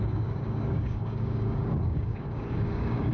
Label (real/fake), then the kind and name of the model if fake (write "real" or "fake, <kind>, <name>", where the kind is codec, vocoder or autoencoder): fake, codec, DAC